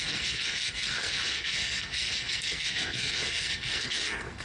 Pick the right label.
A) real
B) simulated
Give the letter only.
B